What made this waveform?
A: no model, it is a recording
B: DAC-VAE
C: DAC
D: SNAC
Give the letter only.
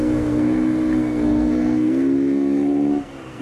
D